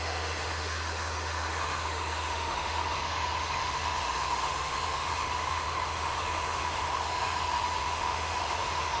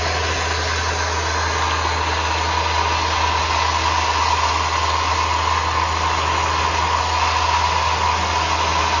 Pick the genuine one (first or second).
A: second